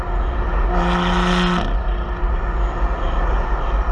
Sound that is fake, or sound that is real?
real